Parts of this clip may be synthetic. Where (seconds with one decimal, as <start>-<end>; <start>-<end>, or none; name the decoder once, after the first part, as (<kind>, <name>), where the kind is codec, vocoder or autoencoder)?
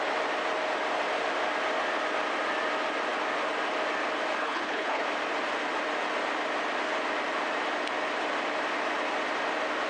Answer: 4.4-5.0 (codec, HILCodec)